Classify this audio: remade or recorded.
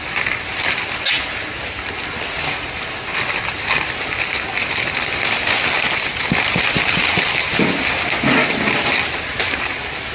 recorded